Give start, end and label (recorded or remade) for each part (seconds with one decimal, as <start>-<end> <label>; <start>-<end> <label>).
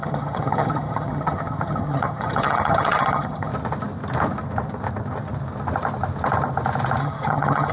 0.0-3.5 remade; 3.5-7.0 recorded; 7.0-7.7 remade